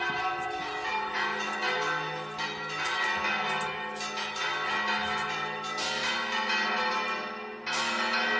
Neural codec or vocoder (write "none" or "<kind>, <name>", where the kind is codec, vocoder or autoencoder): none